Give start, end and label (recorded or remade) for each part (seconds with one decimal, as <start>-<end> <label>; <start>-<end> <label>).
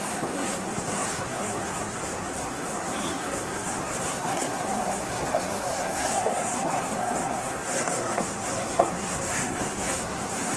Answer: 0.0-10.6 remade